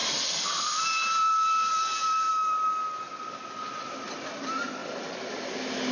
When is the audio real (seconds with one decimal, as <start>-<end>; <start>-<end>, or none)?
0.0-4.8; 5.3-5.9